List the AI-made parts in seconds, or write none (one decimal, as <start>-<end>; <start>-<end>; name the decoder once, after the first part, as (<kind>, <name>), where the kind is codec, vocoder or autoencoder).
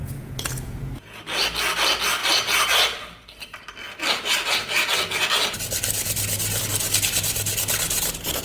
0.0-1.2 (vocoder, Vocos)